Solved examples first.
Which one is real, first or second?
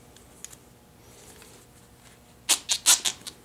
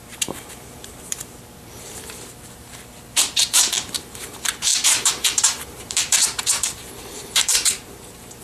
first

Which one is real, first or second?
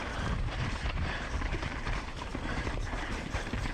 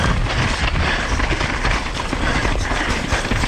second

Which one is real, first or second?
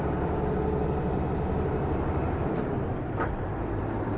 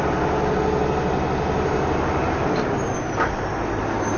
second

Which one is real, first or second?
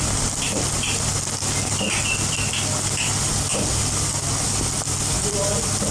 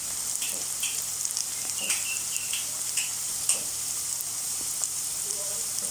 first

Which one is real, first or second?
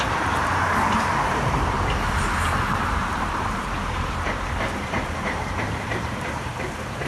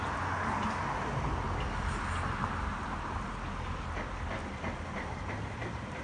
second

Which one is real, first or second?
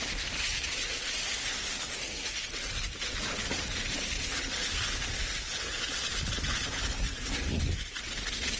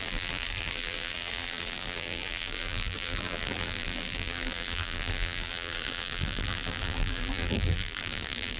first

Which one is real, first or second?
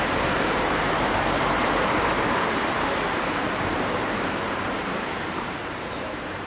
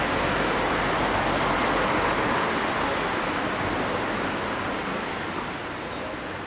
second